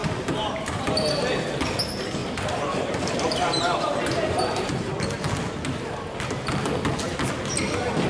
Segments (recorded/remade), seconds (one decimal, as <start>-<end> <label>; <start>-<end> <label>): 0.0-1.2 remade; 1.2-2.2 recorded; 2.2-4.9 remade; 4.9-8.1 recorded